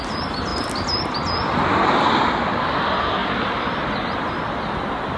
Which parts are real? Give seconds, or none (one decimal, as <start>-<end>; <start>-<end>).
0.0-5.2